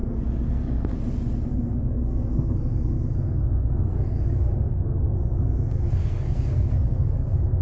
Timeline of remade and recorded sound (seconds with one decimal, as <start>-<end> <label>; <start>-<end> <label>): 0.0-0.5 recorded; 0.5-0.9 remade; 0.9-1.5 recorded; 1.5-7.6 remade

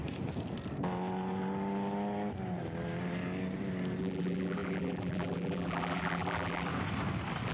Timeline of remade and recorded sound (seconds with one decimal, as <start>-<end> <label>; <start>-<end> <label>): 0.0-4.0 recorded; 4.0-6.7 remade; 6.7-7.5 recorded

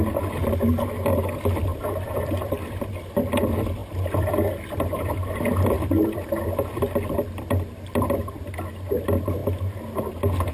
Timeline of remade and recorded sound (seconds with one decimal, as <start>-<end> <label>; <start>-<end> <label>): 0.0-1.7 recorded; 1.7-2.9 remade; 2.9-3.8 recorded; 3.8-7.5 remade; 7.5-10.5 recorded

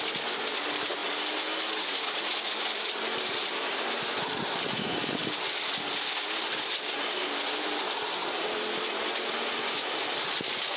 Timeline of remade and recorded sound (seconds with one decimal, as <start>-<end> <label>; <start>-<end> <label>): 0.0-10.8 recorded

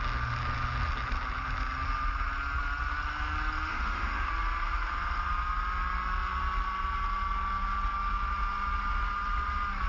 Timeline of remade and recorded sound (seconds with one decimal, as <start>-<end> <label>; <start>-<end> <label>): 0.0-3.7 recorded; 3.7-4.3 remade; 4.3-9.9 recorded